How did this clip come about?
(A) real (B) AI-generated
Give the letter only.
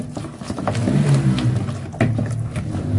A